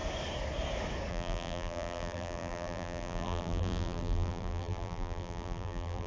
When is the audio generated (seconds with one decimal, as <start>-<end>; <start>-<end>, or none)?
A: 1.1-6.1